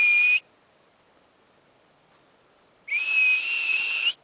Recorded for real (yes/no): yes